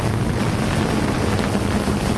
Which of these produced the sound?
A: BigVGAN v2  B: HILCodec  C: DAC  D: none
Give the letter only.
D